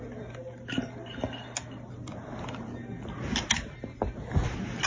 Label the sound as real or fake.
real